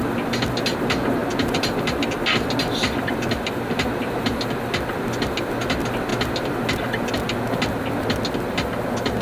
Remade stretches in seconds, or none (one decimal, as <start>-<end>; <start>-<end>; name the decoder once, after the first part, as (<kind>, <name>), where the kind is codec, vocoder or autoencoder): none